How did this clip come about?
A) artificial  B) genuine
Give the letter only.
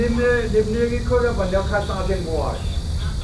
B